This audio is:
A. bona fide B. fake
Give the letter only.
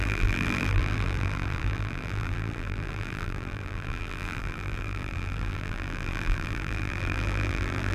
B